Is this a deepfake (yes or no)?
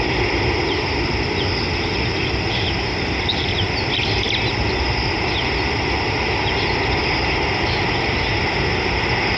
no